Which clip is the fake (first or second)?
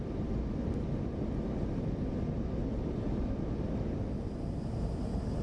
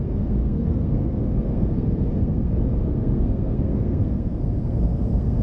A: second